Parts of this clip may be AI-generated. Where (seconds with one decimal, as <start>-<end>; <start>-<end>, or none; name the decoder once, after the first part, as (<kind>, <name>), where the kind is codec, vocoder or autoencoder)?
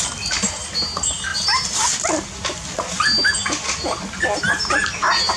none